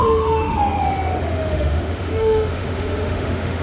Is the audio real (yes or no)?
no